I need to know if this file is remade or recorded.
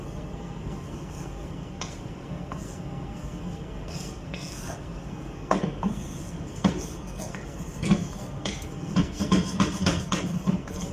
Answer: remade